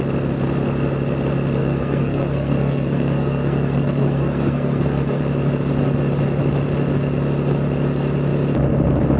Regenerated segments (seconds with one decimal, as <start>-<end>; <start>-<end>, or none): 1.6-5.2